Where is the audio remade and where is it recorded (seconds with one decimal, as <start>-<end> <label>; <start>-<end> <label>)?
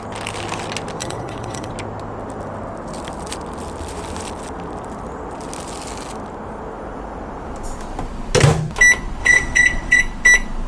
0.0-1.0 recorded; 1.0-1.7 remade; 1.7-9.2 recorded; 9.2-10.0 remade; 10.0-10.7 recorded